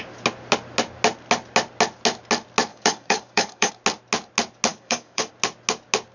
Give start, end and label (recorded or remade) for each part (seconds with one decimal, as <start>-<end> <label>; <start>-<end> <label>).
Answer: 0.0-2.7 recorded; 2.7-3.7 remade; 3.7-4.7 recorded; 4.7-5.3 remade; 5.3-6.1 recorded